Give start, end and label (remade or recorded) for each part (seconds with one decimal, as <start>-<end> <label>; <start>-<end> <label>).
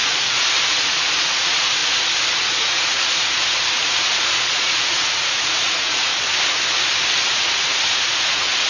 0.0-1.8 remade; 1.8-2.4 recorded; 2.4-6.1 remade; 6.1-7.3 recorded; 7.3-8.7 remade